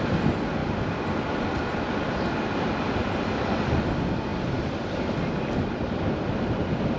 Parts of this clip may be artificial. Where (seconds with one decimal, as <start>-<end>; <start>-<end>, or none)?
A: 0.6-2.2; 3.0-3.8; 4.3-7.0